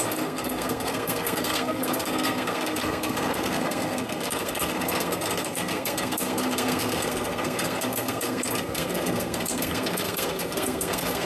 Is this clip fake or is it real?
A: fake